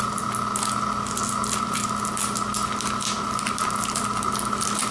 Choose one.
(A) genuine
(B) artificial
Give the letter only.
A